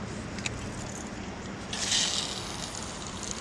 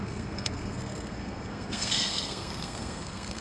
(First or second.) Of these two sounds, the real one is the first